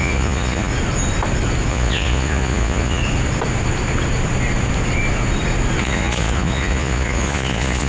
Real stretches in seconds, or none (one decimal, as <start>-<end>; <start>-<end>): 0.7-1.7; 3.0-5.8